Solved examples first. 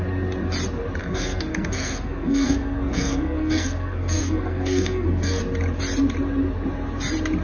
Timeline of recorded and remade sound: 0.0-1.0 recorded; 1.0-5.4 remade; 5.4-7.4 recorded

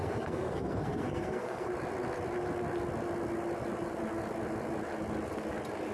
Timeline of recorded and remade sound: 0.0-1.7 remade; 1.7-5.9 recorded

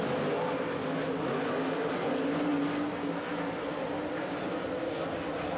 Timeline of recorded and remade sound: 0.0-5.6 recorded

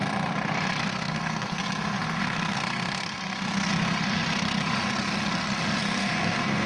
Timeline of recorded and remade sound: 0.0-0.8 recorded; 0.8-1.6 remade; 1.6-2.2 recorded; 2.2-3.7 remade; 3.7-5.8 recorded; 5.8-6.7 remade